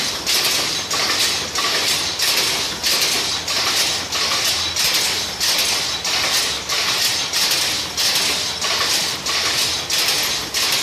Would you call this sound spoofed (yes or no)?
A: no